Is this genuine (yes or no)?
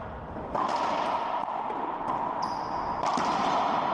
yes